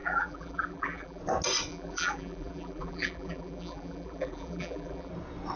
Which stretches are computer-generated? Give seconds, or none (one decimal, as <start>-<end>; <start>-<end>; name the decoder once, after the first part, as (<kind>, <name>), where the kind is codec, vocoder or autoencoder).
0.0-1.2 (vocoder, BigVGAN v2); 1.7-5.1

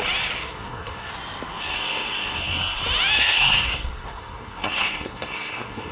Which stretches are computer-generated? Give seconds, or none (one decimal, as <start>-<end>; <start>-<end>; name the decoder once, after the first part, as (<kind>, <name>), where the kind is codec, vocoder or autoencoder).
0.4-1.1 (codec, SNAC); 1.6-2.8; 3.2-5.9